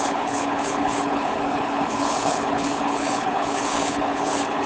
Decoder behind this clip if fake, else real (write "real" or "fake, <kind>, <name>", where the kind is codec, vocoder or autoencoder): fake, codec, HILCodec